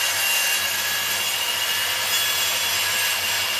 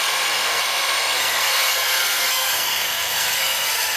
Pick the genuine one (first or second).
first